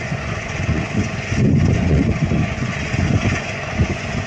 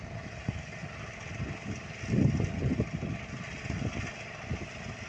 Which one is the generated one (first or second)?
first